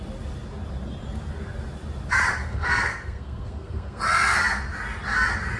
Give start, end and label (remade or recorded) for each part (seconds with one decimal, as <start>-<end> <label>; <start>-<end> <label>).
0.0-2.4 recorded; 2.4-4.0 remade; 4.0-5.6 recorded